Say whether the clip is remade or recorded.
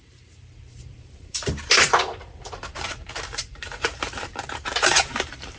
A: remade